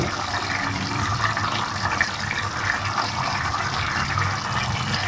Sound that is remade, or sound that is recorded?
recorded